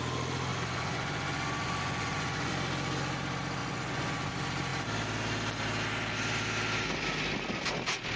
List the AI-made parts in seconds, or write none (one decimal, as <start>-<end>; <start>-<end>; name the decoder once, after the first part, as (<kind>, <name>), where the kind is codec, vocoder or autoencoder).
0.5-2.5 (vocoder, Vocos); 3.6-4.3